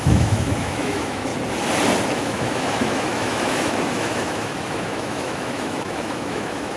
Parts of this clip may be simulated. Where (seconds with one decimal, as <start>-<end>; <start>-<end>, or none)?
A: 0.0-1.3; 2.1-6.8